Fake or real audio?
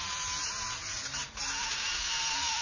real